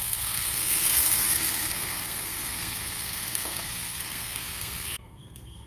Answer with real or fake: fake